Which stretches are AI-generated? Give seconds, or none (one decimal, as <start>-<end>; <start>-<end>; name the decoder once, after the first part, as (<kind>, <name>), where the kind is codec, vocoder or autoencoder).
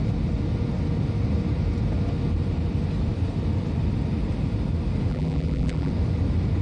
5.1-5.9 (vocoder, BigVGAN v2)